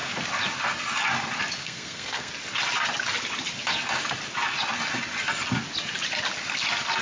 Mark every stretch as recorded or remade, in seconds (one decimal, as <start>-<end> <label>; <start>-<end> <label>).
0.0-1.6 recorded; 1.6-2.3 remade; 2.3-7.0 recorded